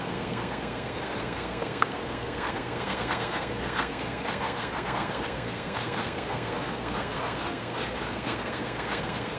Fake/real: fake